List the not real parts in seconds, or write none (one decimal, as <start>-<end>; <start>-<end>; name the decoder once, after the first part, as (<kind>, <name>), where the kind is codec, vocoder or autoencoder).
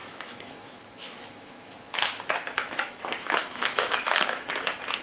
0.0-3.0 (autoencoder, DAC-VAE); 3.4-4.5